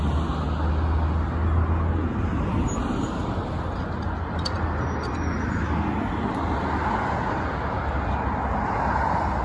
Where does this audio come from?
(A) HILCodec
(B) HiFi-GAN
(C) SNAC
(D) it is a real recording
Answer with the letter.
D